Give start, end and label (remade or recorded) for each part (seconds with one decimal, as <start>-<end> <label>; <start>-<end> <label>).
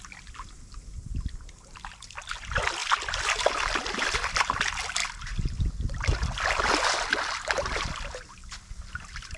0.0-9.4 recorded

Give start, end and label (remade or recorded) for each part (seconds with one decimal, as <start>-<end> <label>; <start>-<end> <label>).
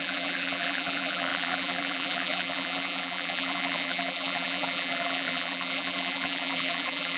0.0-7.2 remade